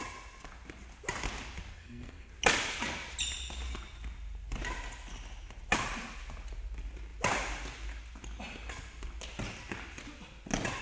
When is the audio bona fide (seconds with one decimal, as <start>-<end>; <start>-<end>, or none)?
0.0-1.7; 2.3-10.8